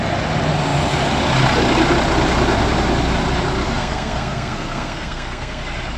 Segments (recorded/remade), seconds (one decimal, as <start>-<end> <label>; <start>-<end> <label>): 0.0-3.6 recorded; 3.6-5.6 remade; 5.6-6.0 recorded